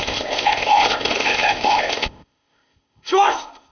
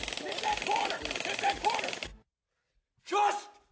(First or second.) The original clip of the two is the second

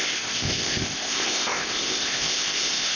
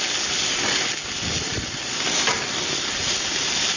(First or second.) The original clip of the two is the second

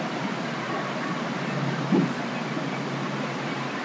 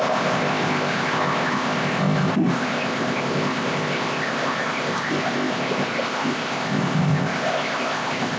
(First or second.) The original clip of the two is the first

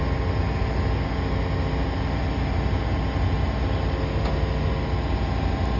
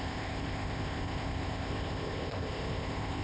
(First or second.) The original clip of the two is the first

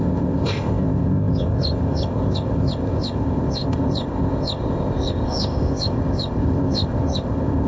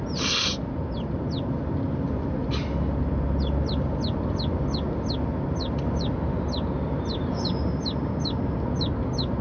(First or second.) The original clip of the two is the second